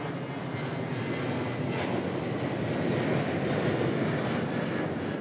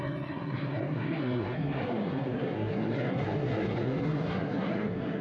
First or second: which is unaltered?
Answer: first